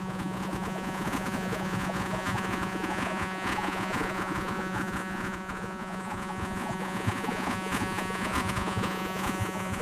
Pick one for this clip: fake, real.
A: fake